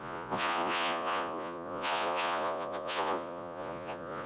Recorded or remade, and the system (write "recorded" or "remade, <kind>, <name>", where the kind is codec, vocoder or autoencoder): remade, vocoder, Vocos